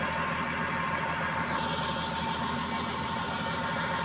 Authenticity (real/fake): real